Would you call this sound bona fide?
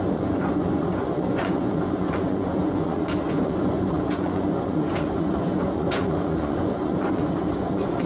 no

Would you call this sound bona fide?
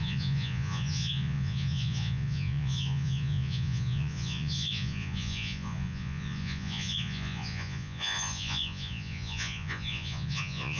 no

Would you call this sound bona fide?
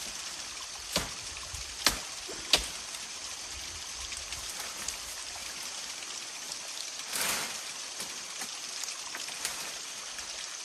yes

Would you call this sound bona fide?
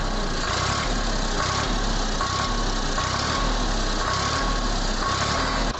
yes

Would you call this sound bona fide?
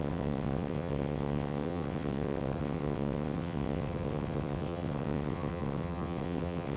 no